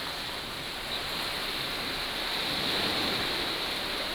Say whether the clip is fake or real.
real